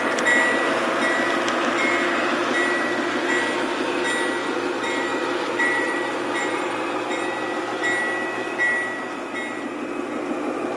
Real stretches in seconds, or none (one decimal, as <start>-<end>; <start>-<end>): 0.0-4.4; 7.2-10.8